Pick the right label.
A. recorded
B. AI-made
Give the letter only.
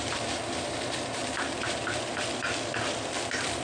B